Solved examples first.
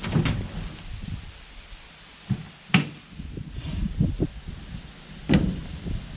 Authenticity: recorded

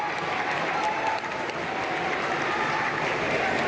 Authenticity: recorded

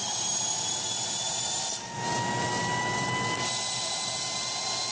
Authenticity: recorded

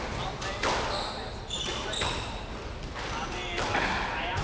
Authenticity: recorded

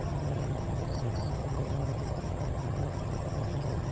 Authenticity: remade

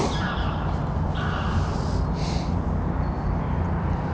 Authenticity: recorded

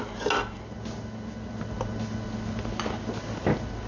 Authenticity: recorded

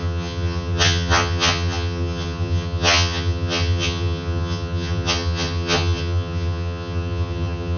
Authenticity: remade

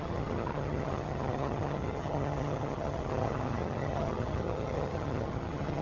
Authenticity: remade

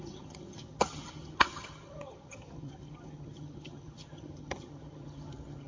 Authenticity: remade